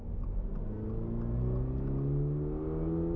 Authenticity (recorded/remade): recorded